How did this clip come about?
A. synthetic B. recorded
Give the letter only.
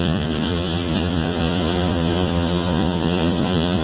A